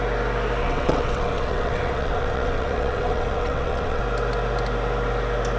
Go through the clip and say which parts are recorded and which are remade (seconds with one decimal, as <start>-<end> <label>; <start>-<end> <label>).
0.0-0.6 recorded; 0.6-4.0 remade; 4.0-5.6 recorded